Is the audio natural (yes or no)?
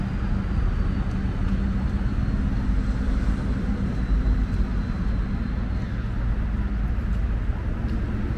yes